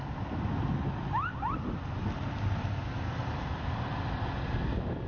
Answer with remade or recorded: recorded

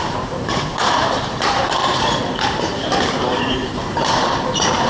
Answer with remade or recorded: remade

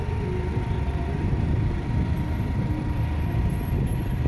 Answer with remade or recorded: recorded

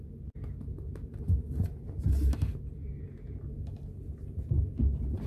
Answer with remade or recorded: recorded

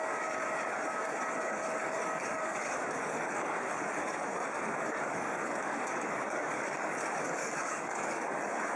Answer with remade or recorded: remade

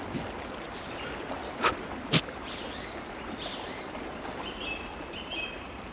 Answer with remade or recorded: recorded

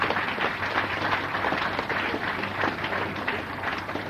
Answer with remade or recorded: recorded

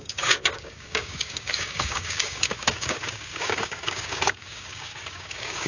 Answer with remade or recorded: remade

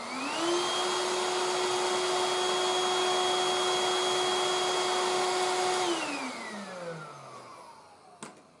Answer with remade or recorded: recorded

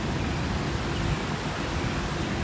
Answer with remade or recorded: recorded